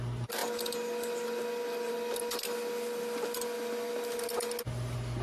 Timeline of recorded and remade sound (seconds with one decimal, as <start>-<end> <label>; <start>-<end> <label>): 0.0-5.2 recorded